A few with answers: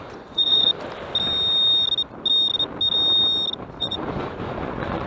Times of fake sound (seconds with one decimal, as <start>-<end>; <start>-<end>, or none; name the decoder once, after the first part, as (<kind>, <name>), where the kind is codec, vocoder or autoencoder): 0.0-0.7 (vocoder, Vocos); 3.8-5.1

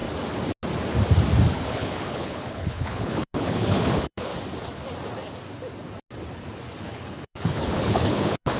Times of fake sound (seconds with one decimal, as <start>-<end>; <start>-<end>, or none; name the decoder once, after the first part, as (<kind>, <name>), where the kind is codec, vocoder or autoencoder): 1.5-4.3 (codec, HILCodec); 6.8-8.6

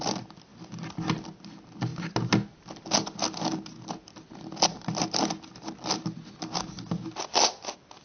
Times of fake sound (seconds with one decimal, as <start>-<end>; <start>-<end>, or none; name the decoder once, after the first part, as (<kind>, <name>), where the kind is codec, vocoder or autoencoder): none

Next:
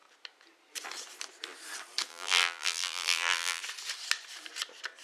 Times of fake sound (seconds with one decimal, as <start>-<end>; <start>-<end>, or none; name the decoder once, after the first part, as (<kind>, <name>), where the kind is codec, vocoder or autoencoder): 2.1-3.6 (vocoder, BigVGAN v2)

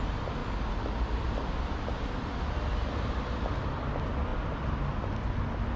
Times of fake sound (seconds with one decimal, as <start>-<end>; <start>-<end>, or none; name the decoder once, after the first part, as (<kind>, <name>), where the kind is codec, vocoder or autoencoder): none